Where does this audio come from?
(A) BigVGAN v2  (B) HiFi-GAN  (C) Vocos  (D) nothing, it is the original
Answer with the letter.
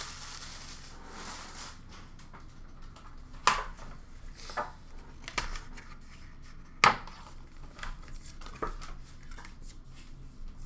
D